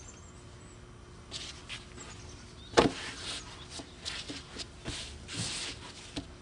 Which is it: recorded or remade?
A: recorded